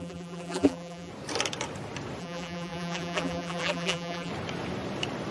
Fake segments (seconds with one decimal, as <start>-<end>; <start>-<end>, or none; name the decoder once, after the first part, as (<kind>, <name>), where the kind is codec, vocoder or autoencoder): 0.0-1.1 (vocoder, BigVGAN v2); 2.2-4.3

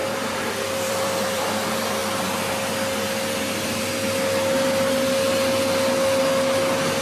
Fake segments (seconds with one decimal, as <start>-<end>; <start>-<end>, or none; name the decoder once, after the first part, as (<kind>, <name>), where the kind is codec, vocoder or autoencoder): 0.0-1.5 (vocoder, BigVGAN v2)

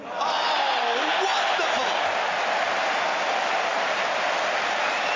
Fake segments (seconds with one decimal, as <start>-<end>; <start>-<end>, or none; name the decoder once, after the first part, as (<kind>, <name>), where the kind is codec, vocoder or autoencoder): 2.8-4.0 (vocoder, BigVGAN v2)

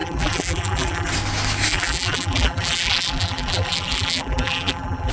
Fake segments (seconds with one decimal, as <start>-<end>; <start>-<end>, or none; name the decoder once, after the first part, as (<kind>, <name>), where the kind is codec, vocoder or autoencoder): 0.0-1.1 (vocoder, BigVGAN v2); 1.7-5.1